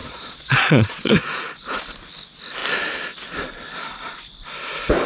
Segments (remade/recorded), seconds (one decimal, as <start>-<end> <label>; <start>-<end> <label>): 0.0-1.6 remade; 1.6-5.1 recorded